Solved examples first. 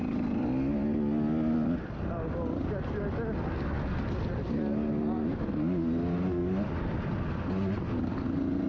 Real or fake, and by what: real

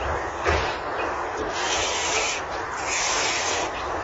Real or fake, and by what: fake, vocoder, BigVGAN v2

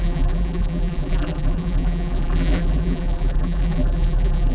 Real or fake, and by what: fake, vocoder, BigVGAN v2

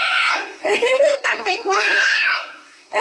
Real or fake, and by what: fake, codec, SNAC